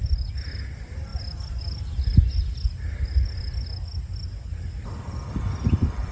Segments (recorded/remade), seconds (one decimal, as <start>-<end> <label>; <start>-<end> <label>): 0.0-6.1 recorded